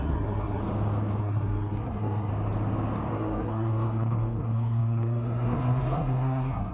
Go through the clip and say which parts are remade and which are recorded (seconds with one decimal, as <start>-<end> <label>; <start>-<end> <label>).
0.0-0.6 remade; 0.6-1.2 recorded; 1.2-2.3 remade; 2.3-3.1 recorded; 3.1-6.7 remade